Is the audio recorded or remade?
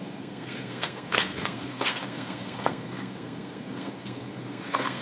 remade